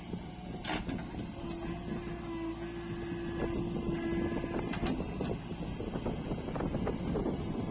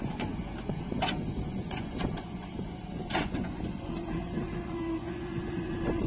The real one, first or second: first